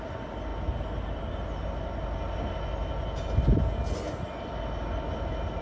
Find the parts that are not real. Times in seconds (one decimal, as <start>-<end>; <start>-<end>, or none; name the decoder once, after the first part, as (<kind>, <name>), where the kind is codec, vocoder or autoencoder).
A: none